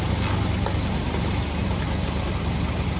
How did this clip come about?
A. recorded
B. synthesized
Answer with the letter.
A